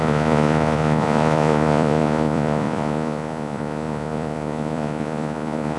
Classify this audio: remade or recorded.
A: remade